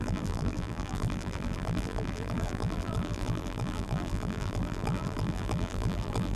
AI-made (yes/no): yes